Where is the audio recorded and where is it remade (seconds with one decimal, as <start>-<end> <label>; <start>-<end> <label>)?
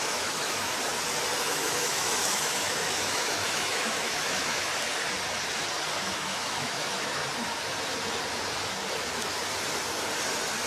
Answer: 0.0-0.7 remade; 0.7-1.5 recorded; 1.5-4.7 remade; 4.7-6.0 recorded; 6.0-7.2 remade; 7.2-10.7 recorded